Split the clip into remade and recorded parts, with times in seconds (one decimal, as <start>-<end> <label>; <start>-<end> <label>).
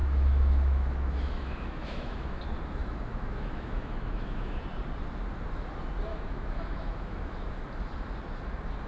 0.0-2.4 remade; 2.4-2.8 recorded; 2.8-4.6 remade; 4.6-6.1 recorded; 6.1-7.5 remade; 7.5-8.9 recorded